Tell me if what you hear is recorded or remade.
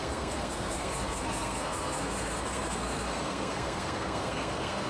remade